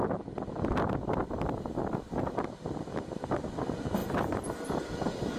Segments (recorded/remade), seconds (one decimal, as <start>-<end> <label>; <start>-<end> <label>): 0.0-5.4 recorded